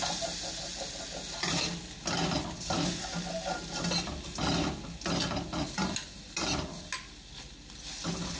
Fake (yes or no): no